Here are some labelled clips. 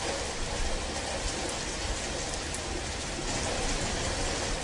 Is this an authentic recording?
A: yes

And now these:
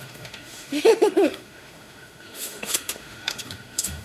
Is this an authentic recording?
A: no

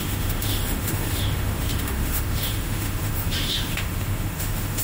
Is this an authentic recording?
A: no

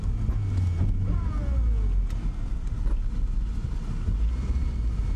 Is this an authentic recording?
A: yes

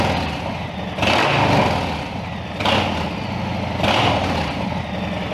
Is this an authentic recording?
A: yes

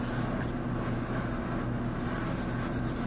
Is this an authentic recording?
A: yes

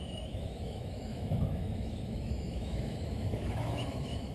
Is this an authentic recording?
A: no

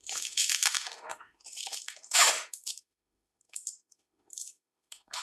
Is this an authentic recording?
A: no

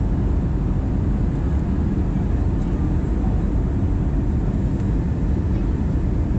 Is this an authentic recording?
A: yes